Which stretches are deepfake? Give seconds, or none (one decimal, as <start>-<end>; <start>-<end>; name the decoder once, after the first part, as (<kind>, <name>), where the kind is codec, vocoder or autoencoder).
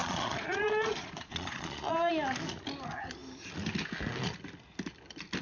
0.0-2.1 (vocoder, Vocos)